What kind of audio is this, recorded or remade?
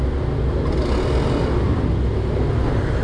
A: recorded